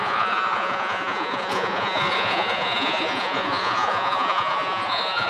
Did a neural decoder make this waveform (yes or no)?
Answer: yes